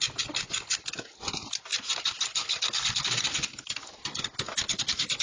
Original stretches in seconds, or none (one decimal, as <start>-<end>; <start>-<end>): 0.0-5.2